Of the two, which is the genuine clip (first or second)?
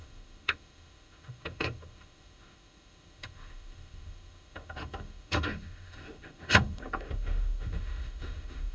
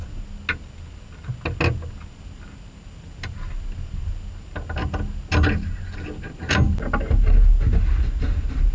second